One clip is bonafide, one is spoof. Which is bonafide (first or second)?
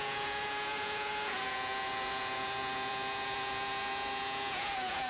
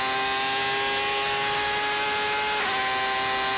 second